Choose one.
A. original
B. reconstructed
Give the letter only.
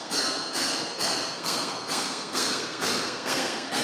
B